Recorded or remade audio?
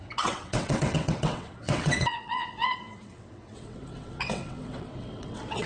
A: remade